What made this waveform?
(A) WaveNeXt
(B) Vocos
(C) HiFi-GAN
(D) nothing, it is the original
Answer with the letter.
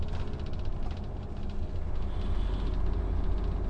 D